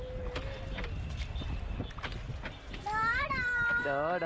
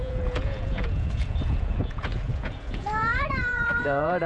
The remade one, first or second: second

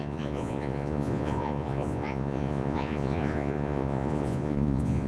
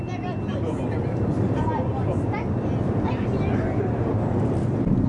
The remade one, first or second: first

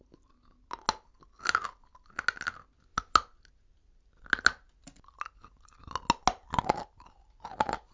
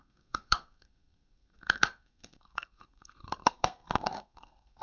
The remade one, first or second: second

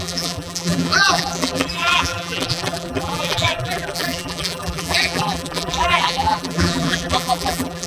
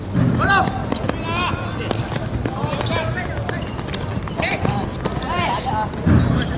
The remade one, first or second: first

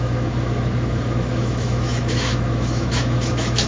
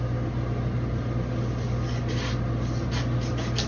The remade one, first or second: first